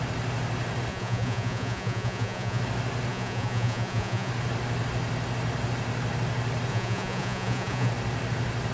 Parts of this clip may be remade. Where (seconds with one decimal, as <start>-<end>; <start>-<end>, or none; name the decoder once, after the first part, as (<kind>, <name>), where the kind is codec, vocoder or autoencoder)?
0.9-2.6 (vocoder, Vocos); 3.1-4.3; 6.7-7.9